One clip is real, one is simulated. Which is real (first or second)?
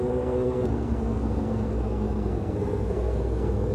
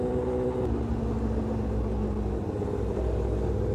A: second